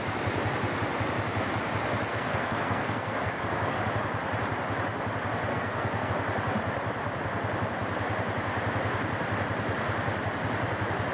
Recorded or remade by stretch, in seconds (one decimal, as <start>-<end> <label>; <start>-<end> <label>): 0.0-2.1 recorded; 2.1-3.8 remade; 3.8-5.5 recorded; 5.5-6.1 remade; 6.1-11.1 recorded